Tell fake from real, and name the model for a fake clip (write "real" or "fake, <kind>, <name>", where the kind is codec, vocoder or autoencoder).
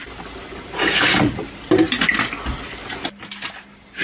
real